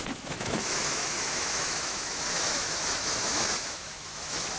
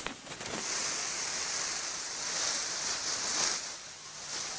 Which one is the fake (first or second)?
first